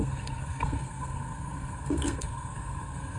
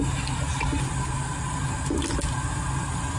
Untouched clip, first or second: second